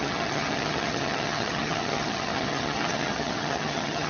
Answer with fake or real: fake